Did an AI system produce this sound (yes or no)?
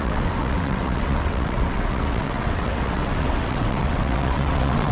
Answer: yes